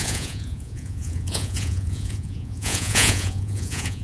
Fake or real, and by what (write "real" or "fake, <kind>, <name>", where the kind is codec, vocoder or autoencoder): fake, vocoder, Vocos